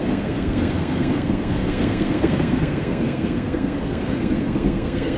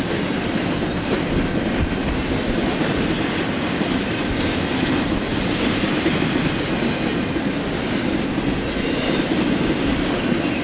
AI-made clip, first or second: first